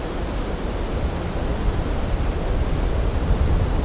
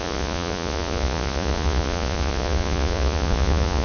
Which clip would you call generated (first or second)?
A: second